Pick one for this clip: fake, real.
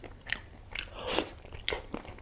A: real